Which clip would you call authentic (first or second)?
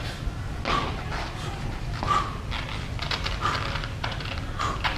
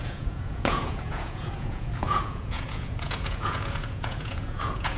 first